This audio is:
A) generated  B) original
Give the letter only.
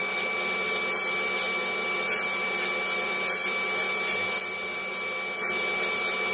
B